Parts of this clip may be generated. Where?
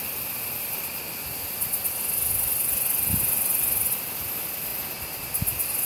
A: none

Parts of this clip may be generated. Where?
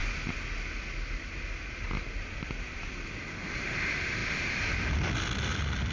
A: none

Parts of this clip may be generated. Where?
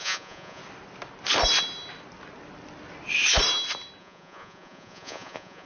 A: 0.0-0.6 (vocoder, Vocos); 4.0-5.7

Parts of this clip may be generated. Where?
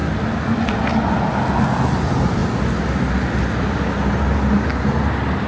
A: none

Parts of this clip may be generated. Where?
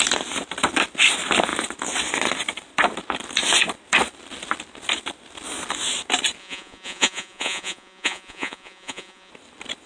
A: 6.4-9.3 (vocoder, Vocos)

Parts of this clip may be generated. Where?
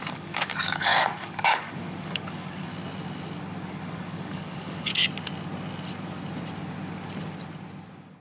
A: 0.0-2.7 (codec, DAC); 3.7-4.9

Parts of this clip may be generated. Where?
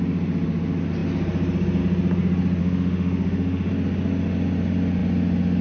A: 2.6-3.7 (autoencoder, DAC-VAE)